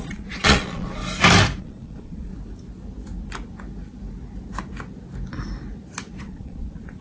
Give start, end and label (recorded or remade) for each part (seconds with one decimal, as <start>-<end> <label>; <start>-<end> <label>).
0.0-1.0 remade; 1.0-1.6 recorded; 1.6-2.3 remade; 2.3-6.2 recorded; 6.2-7.0 remade